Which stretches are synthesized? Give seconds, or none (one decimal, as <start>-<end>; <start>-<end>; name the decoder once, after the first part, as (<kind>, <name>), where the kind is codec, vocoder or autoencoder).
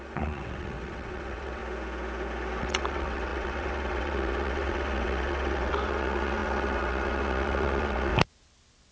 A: 0.0-1.6 (vocoder, WaveNeXt); 2.6-8.1